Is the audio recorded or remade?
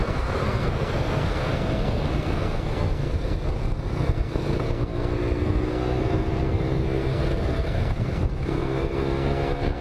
remade